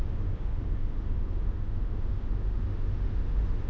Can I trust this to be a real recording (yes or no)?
no